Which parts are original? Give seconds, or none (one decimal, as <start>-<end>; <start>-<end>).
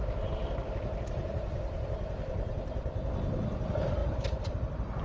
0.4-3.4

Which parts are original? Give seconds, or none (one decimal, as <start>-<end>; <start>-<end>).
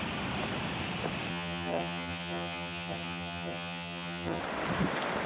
0.0-1.3; 4.4-5.3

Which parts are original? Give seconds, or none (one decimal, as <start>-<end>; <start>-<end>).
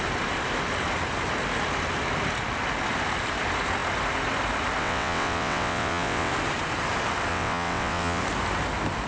0.0-4.8; 6.3-7.3; 8.2-9.1